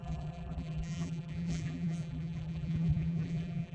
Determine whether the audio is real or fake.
fake